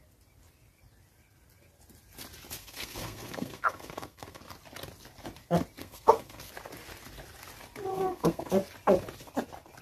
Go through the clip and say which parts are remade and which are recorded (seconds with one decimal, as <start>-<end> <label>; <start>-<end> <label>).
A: 0.0-2.6 recorded; 2.6-4.4 remade; 4.4-5.8 recorded; 5.8-6.5 remade; 6.5-7.9 recorded; 7.9-8.5 remade; 8.5-9.8 recorded